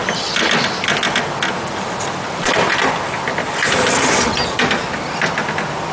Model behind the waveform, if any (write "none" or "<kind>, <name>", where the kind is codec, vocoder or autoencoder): none